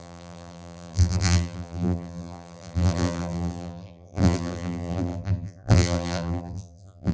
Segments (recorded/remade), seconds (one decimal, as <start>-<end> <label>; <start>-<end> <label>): 0.0-7.1 remade